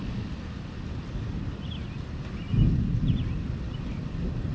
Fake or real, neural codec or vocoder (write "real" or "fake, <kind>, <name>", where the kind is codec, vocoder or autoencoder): real